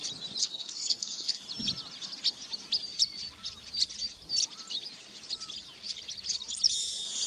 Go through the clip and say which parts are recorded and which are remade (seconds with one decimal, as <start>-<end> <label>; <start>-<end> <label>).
0.0-0.4 recorded; 0.4-1.4 remade; 1.4-7.3 recorded